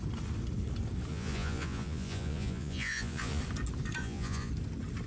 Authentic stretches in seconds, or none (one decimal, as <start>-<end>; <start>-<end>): 0.0-1.1; 3.4-4.0; 4.5-5.1